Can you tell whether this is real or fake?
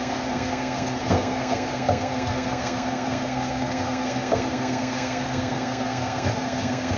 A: fake